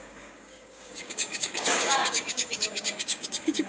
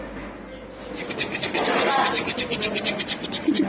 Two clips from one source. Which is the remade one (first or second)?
first